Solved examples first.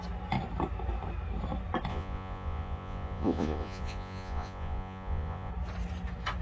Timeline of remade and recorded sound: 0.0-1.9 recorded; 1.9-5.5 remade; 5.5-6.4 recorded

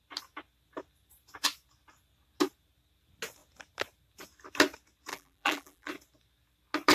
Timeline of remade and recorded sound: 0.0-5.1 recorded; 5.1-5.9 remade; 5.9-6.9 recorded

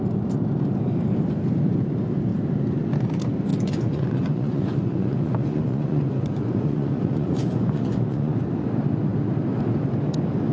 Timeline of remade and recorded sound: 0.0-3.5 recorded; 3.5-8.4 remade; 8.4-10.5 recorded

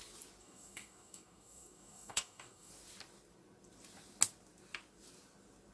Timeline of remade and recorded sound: 0.0-0.4 recorded; 0.4-2.7 remade; 2.7-5.7 recorded

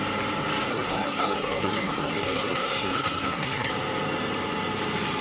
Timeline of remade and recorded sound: 0.0-0.7 recorded; 0.7-3.7 remade; 3.7-5.2 recorded

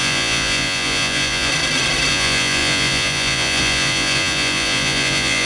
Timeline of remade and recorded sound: 0.0-1.5 remade; 1.5-2.1 recorded; 2.1-5.5 remade

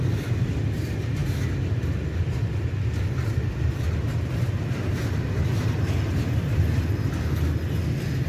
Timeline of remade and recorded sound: 0.0-8.3 recorded